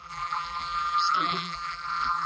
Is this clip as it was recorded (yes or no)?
no